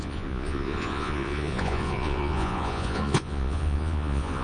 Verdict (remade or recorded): remade